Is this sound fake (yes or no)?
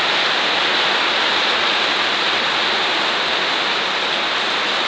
no